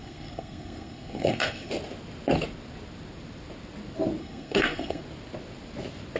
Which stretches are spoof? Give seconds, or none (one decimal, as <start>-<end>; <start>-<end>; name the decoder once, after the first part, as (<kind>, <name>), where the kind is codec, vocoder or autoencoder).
0.0-1.7 (codec, SNAC); 4.2-5.0